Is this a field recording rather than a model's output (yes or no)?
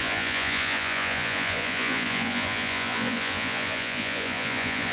no